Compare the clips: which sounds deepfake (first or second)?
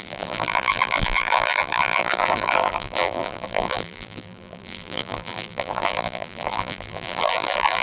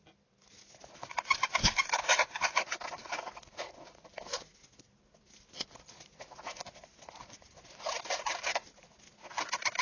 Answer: first